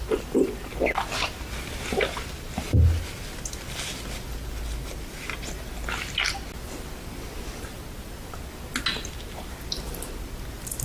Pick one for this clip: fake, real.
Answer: real